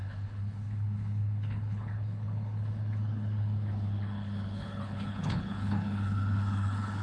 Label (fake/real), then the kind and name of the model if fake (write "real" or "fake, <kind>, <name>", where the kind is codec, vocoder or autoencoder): fake, codec, HILCodec